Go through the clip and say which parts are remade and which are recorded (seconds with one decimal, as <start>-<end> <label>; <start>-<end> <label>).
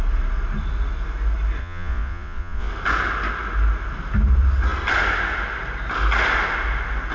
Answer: 0.0-1.6 recorded; 1.6-2.7 remade; 2.7-7.1 recorded